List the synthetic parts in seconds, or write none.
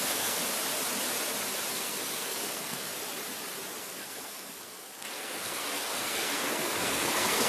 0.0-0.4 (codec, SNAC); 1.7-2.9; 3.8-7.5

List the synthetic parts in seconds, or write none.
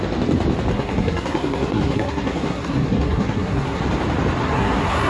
0.7-3.8 (codec, SNAC); 4.4-5.1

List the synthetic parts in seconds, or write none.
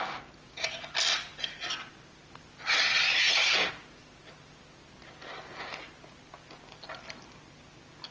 none